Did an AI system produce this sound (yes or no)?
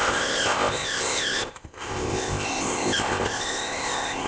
yes